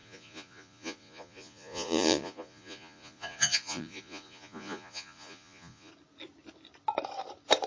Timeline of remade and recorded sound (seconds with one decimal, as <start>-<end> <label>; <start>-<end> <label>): 0.0-5.9 remade; 5.9-7.7 recorded